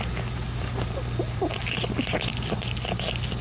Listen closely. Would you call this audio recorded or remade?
recorded